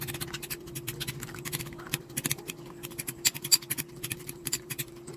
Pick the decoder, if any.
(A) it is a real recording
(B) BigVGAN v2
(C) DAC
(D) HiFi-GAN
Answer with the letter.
B